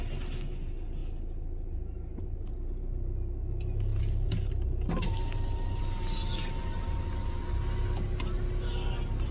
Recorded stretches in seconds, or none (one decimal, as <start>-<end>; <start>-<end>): 0.0-9.3

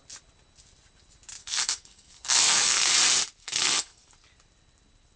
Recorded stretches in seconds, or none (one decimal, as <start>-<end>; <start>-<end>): 0.0-1.4; 2.9-3.4; 4.1-5.2

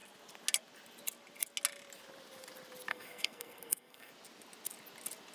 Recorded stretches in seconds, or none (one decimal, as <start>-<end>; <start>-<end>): 0.0-2.9; 4.1-5.3

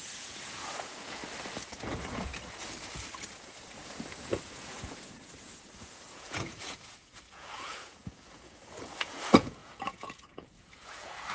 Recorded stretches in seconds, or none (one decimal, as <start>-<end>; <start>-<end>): 1.2-1.7; 2.3-3.2

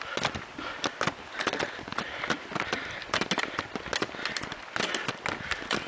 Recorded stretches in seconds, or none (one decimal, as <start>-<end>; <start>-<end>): 0.0-5.9

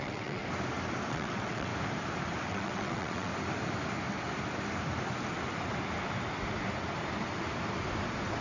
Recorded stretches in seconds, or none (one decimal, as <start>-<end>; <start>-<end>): 0.4-1.1; 1.7-2.5; 3.3-8.4

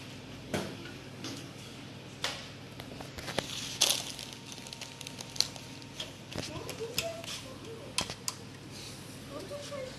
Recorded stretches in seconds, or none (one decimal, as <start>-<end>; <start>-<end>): 0.0-0.5; 1.9-10.0

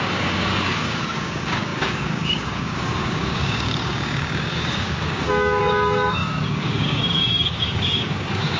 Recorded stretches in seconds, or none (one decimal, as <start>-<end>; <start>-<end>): none